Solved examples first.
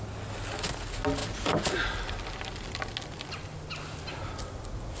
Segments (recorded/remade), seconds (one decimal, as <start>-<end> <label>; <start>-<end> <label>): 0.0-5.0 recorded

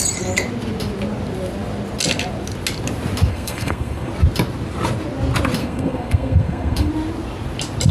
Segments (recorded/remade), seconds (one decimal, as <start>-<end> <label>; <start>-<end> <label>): 0.0-3.3 recorded; 3.3-4.1 remade; 4.1-5.6 recorded; 5.6-6.9 remade; 6.9-7.9 recorded

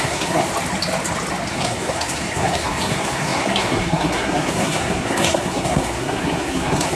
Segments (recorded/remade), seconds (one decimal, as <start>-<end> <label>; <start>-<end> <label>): 0.0-0.5 remade; 0.5-1.5 recorded; 1.5-7.0 remade

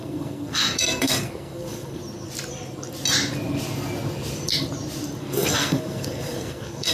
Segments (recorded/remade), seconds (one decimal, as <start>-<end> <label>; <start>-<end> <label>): 0.0-2.0 remade; 2.0-5.2 recorded; 5.2-6.9 remade

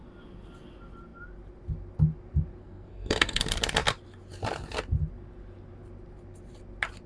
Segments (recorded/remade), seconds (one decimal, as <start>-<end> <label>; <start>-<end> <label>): 0.0-2.6 recorded; 2.6-3.4 remade; 3.4-7.1 recorded

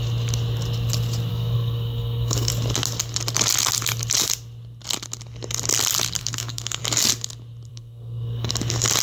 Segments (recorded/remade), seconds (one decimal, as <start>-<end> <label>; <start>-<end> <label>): 0.0-1.3 recorded; 1.3-2.5 remade; 2.5-6.2 recorded; 6.2-6.8 remade; 6.8-7.7 recorded; 7.7-8.5 remade; 8.5-9.0 recorded